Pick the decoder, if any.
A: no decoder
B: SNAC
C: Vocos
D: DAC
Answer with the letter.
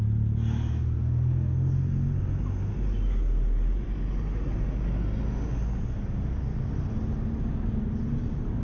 A